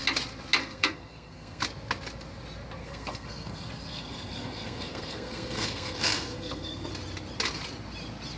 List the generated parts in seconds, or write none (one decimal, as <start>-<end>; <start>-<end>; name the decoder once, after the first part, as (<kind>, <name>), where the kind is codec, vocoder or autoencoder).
0.6-1.6 (codec, SNAC); 2.8-6.9